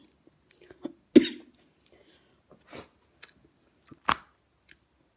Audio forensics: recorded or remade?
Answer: recorded